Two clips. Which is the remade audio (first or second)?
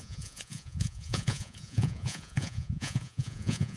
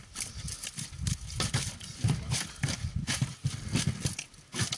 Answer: first